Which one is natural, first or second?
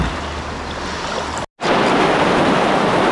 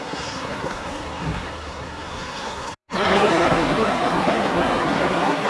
first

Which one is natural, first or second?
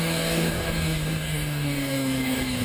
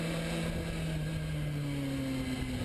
second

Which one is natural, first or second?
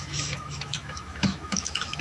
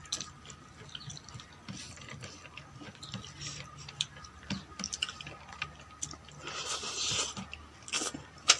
second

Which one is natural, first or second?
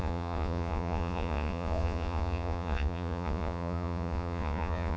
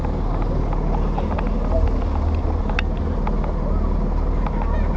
second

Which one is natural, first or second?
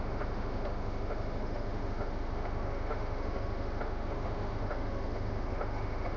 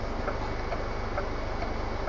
second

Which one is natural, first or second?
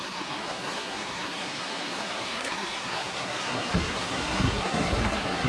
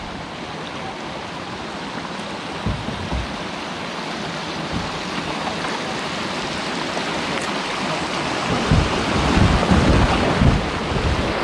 second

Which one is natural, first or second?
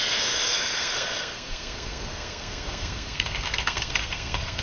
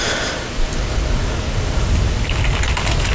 second